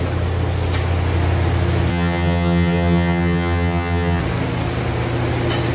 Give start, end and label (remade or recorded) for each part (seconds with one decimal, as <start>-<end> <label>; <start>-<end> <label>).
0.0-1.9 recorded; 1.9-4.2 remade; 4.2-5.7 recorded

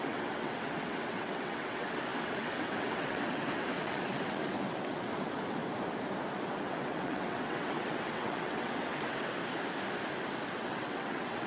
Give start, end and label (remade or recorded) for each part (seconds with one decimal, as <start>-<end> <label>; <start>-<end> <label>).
0.0-5.6 remade; 5.6-6.3 recorded; 6.3-9.4 remade; 9.4-10.6 recorded; 10.6-11.5 remade

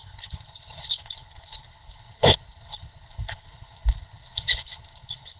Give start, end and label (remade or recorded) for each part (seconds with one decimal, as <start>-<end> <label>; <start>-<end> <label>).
0.0-5.4 remade